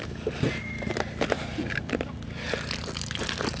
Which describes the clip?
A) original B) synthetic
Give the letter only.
B